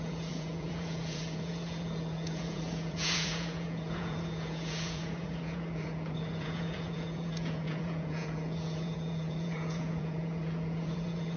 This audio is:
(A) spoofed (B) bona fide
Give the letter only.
A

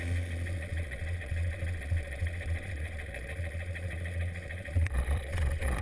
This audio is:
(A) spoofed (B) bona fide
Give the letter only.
A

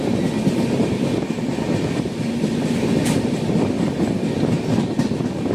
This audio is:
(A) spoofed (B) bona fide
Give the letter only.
B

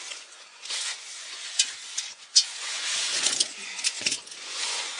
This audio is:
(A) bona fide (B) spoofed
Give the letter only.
B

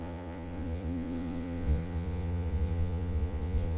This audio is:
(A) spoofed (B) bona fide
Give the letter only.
A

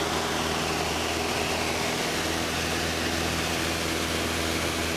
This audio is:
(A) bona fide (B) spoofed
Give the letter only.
A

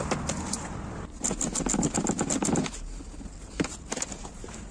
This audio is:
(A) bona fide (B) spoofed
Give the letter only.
A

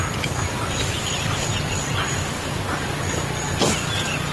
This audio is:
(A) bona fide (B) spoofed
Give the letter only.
A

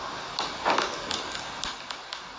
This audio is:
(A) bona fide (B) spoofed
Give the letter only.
A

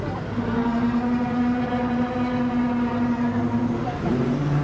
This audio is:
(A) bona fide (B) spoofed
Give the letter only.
A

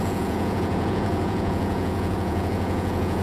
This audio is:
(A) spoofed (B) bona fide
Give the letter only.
A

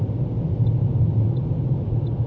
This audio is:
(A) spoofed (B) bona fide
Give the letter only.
B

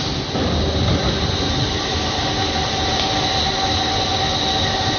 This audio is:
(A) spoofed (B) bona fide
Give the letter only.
B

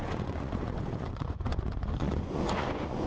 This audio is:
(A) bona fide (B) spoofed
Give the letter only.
B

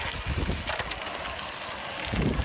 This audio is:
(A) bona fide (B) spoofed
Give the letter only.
A